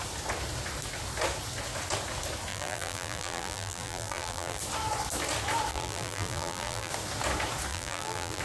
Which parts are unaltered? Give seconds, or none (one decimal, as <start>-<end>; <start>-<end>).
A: 0.0-2.5; 4.6-5.7; 6.9-7.7